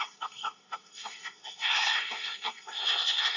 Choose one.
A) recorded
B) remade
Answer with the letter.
B